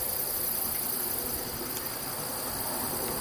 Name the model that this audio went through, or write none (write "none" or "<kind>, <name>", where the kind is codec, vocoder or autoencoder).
none